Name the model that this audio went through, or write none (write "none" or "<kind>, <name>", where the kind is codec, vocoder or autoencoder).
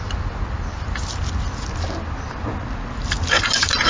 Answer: none